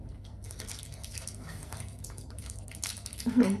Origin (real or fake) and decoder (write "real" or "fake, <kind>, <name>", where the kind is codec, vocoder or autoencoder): fake, codec, SNAC